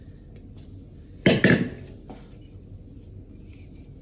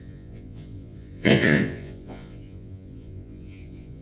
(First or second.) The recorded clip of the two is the first